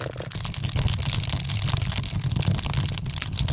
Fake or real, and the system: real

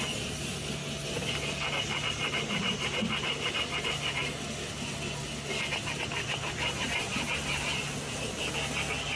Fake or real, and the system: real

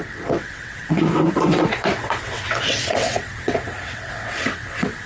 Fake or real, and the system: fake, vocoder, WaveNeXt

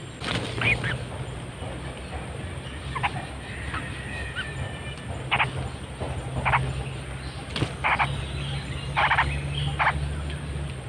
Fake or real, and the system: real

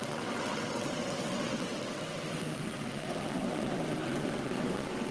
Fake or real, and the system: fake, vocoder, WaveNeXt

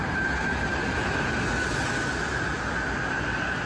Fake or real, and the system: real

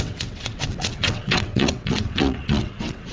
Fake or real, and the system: fake, vocoder, WaveNeXt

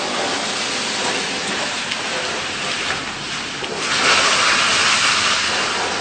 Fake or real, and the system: real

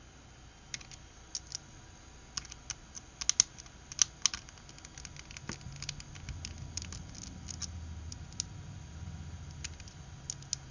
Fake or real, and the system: real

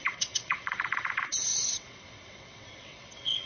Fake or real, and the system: fake, vocoder, WaveNeXt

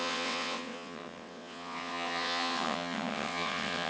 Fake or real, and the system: fake, vocoder, WaveNeXt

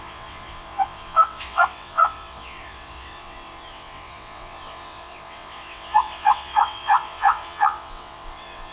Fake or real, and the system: fake, vocoder, WaveNeXt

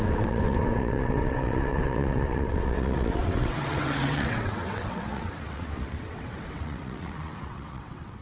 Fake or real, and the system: fake, vocoder, WaveNeXt